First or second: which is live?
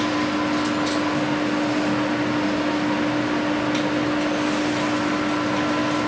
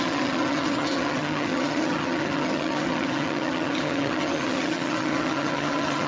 first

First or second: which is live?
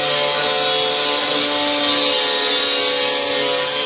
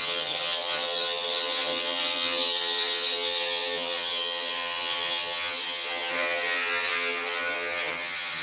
first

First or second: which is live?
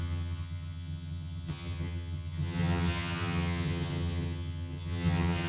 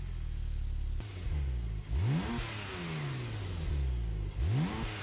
second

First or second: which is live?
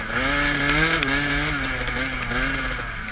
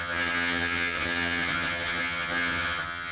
first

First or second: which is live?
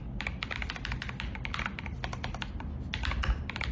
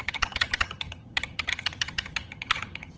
first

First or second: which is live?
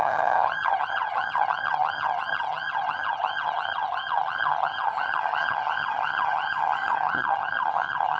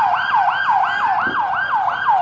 second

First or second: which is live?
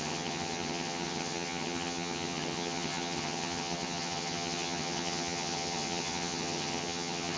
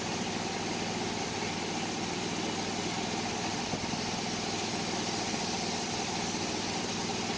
second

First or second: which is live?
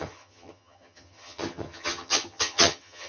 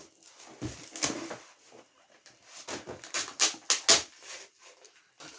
second